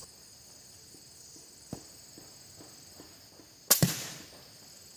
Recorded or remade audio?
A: recorded